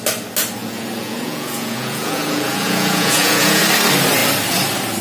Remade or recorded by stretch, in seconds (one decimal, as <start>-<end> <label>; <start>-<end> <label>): 0.0-0.6 recorded; 0.6-3.6 remade; 3.6-5.0 recorded